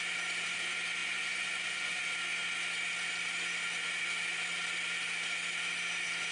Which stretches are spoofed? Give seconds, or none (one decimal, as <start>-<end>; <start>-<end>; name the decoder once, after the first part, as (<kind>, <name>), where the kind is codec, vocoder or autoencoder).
1.0-2.0 (vocoder, Vocos)